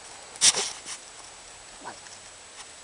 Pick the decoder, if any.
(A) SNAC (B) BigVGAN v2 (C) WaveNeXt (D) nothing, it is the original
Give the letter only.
D